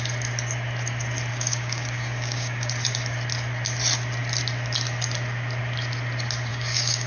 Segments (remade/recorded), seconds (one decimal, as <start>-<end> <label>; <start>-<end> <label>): 0.0-1.3 recorded; 1.3-2.7 remade; 2.7-6.5 recorded; 6.5-7.1 remade